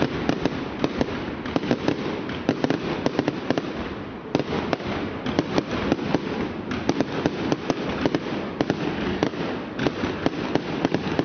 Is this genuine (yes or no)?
yes